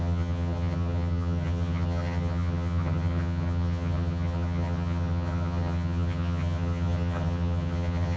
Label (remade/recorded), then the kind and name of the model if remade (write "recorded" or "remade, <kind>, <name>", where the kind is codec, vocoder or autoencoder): remade, vocoder, HiFi-GAN